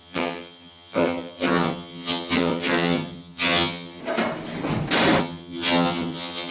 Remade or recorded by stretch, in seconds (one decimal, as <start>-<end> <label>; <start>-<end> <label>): 0.0-4.0 remade; 4.0-5.2 recorded; 5.2-6.5 remade